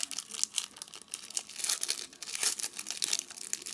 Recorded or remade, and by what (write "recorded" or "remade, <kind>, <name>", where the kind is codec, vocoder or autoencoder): recorded